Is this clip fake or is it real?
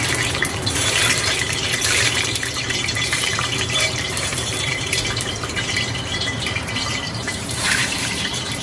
fake